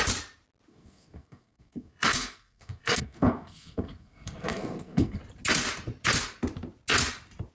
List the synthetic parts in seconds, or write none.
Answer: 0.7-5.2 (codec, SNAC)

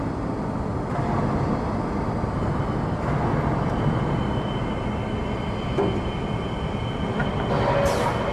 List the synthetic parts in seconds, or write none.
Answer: none

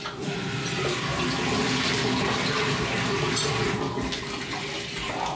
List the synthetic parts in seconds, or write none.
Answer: none

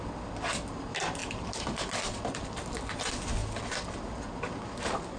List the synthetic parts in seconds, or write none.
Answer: none

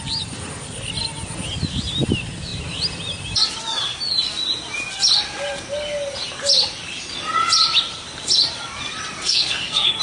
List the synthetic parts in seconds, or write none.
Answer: 9.2-10.0 (codec, SNAC)